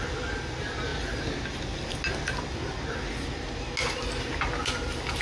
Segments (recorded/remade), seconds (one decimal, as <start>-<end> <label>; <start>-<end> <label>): 0.0-5.2 recorded